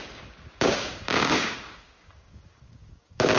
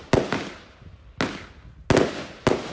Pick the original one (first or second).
second